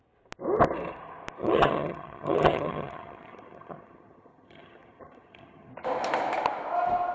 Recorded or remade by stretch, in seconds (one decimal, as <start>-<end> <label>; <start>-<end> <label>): 0.0-1.4 recorded; 1.4-5.7 remade; 5.7-7.1 recorded